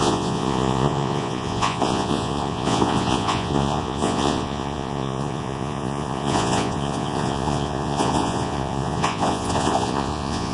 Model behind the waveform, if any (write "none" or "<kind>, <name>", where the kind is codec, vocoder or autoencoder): vocoder, Vocos